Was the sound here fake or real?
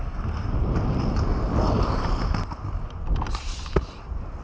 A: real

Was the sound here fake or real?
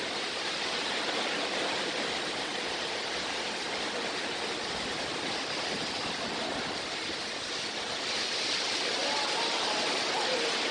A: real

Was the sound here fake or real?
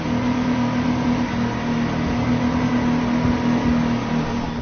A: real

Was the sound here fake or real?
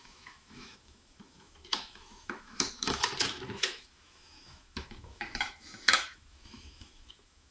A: fake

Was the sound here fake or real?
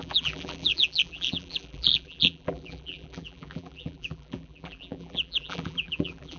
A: fake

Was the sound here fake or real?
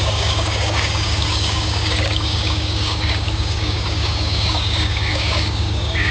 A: fake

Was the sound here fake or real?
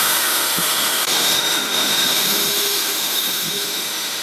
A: fake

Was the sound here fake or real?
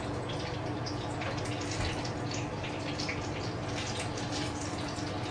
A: real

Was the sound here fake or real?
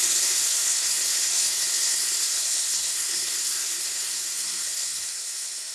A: fake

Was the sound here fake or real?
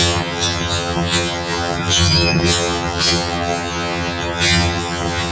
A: fake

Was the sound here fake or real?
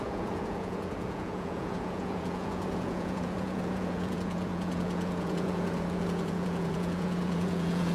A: fake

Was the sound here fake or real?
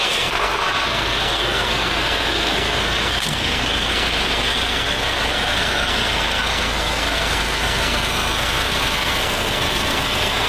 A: fake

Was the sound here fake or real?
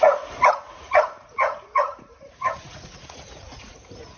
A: fake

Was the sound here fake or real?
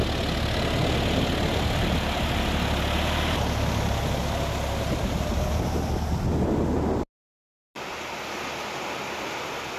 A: real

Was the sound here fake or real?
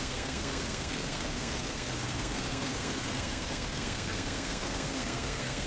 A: fake